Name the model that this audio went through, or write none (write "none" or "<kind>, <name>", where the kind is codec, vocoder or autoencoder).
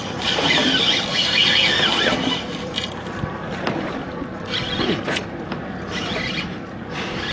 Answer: none